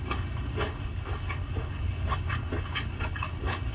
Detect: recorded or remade remade